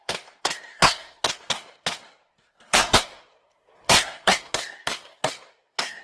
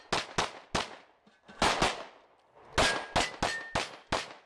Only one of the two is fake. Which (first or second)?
first